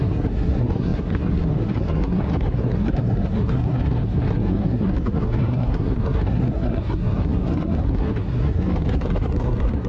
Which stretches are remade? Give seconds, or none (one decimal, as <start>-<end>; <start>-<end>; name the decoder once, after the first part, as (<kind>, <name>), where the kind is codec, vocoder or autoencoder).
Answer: 0.0-9.9 (codec, SNAC)